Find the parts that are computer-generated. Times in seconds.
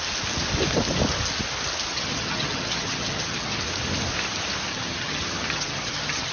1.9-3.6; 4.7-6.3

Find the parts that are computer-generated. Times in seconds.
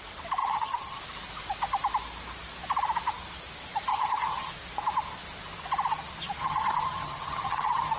0.4-1.0; 3.9-4.5; 6.4-8.0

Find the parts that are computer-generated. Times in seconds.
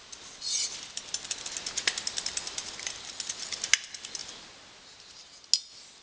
none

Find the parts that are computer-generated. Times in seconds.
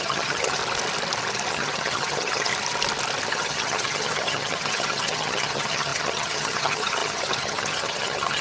0.0-0.6; 1.5-2.5; 3.3-8.4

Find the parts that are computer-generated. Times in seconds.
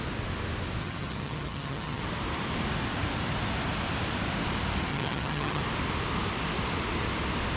0.8-2.0; 4.9-5.6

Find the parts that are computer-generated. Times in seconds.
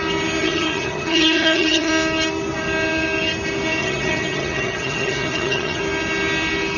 0.4-1.9; 3.8-5.8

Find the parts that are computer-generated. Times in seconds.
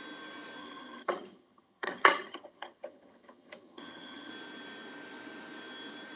0.6-4.3